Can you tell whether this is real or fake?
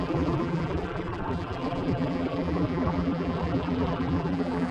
fake